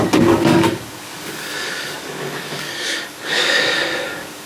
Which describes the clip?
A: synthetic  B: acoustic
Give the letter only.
A